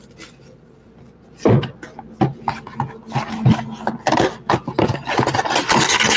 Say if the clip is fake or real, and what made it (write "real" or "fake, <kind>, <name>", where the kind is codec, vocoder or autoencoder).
real